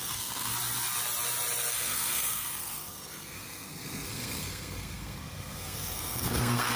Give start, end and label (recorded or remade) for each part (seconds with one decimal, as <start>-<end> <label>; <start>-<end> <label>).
0.0-0.5 remade; 0.5-1.7 recorded; 1.7-6.8 remade